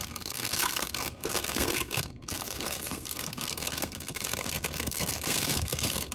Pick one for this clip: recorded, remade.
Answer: remade